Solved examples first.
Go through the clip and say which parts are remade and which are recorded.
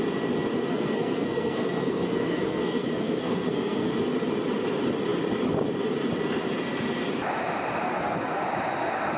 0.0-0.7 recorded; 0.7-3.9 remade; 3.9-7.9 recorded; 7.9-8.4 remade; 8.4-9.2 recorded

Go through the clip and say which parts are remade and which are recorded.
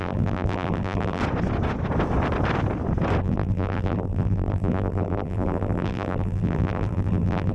0.0-1.2 remade; 1.2-3.2 recorded; 3.2-7.5 remade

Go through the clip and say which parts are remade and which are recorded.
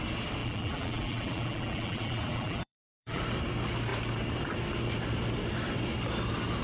0.0-0.4 recorded; 0.4-3.2 remade; 3.2-6.6 recorded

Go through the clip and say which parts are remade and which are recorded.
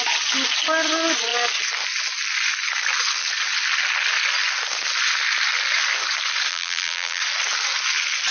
0.0-6.5 recorded; 6.5-7.2 remade; 7.2-8.3 recorded